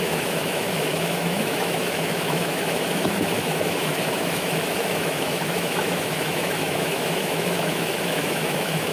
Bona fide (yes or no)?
no